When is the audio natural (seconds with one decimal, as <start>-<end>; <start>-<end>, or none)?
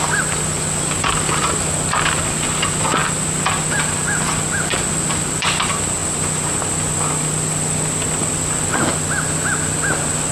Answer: 0.0-10.3